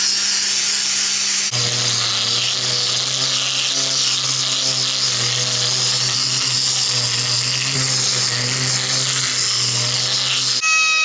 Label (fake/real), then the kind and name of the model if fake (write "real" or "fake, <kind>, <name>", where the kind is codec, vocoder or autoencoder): real